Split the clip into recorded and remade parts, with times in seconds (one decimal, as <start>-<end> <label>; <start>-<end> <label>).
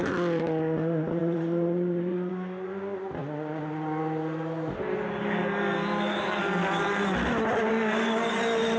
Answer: 0.0-1.2 recorded; 1.2-2.3 remade; 2.3-8.8 recorded